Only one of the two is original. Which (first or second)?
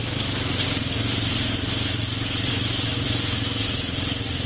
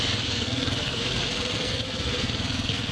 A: first